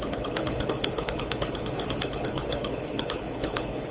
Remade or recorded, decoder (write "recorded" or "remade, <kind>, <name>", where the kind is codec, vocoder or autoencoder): remade, codec, HILCodec